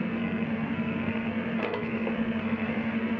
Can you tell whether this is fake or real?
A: fake